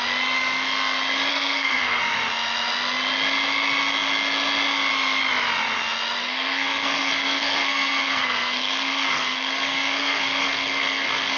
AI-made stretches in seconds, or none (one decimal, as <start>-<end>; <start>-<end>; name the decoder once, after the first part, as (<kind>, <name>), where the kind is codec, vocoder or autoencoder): 1.3-2.0 (codec, SNAC); 6.2-11.4